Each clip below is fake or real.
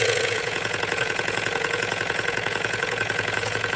fake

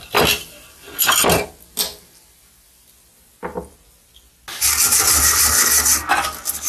real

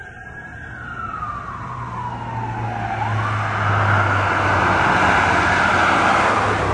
real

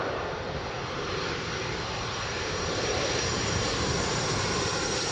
fake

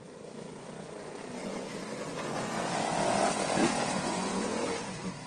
fake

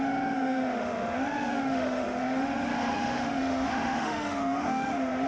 fake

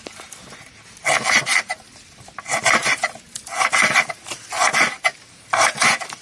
real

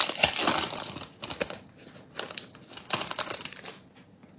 real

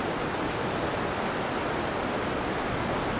real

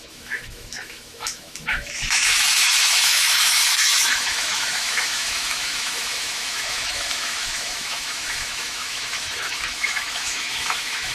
fake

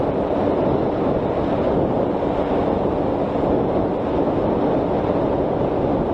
real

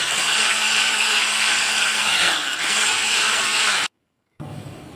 fake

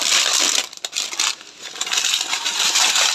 real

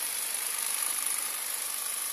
fake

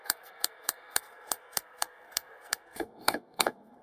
fake